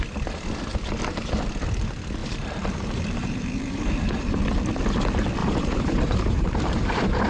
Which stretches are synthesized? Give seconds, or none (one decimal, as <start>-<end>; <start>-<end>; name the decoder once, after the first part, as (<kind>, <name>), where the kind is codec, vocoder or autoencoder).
2.2-4.4 (vocoder, BigVGAN v2); 5.4-7.3